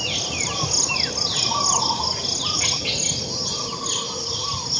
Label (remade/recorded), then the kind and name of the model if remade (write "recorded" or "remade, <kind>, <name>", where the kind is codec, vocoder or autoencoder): recorded